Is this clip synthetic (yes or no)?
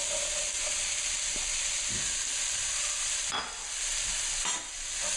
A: no